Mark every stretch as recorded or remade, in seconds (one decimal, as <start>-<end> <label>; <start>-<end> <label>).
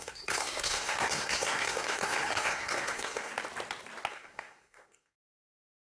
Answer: 0.0-3.3 remade; 3.3-4.1 recorded; 4.1-5.9 remade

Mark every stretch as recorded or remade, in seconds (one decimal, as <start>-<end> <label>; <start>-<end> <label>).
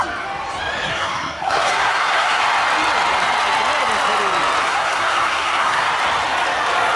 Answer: 0.0-0.9 recorded; 0.9-2.4 remade; 2.4-4.6 recorded; 4.6-5.9 remade; 5.9-7.0 recorded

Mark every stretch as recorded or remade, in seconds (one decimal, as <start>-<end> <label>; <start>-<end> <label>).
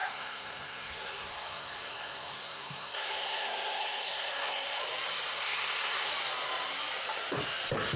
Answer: 0.0-4.8 remade; 4.8-5.3 recorded; 5.3-6.1 remade; 6.1-8.0 recorded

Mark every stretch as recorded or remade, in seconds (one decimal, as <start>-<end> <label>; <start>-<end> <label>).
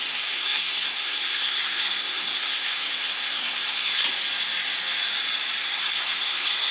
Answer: 0.0-4.0 remade; 4.0-5.6 recorded; 5.6-6.7 remade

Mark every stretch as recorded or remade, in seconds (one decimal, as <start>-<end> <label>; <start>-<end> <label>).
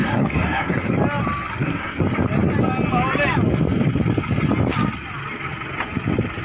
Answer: 0.0-0.9 remade; 0.9-1.5 recorded; 1.5-2.0 remade; 2.0-6.4 recorded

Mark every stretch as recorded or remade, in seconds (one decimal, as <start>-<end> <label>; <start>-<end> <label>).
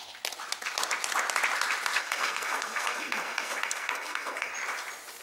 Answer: 0.0-2.0 recorded; 2.0-4.5 remade; 4.5-5.2 recorded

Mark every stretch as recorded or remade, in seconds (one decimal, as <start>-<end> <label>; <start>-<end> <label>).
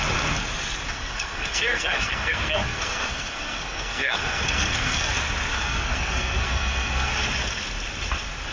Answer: 0.0-0.9 recorded; 0.9-5.1 remade; 5.1-5.5 recorded; 5.5-7.1 remade; 7.1-8.5 recorded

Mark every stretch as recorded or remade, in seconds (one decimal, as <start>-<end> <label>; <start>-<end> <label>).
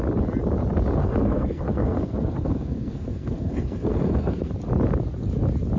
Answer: 0.0-1.0 recorded; 1.0-4.5 remade; 4.5-5.8 recorded